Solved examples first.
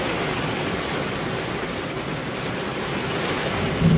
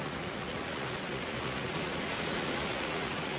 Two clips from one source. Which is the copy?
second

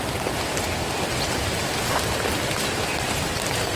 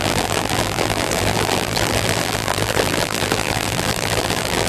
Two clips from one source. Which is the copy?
second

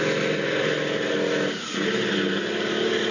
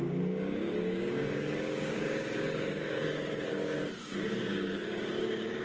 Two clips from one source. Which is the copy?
second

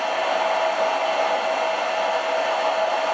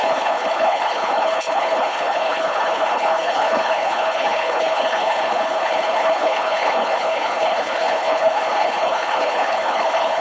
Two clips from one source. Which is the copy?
second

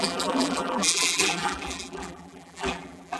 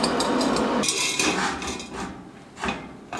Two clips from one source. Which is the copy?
first